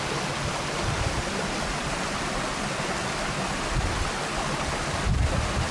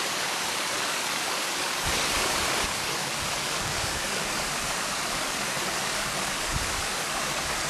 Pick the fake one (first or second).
second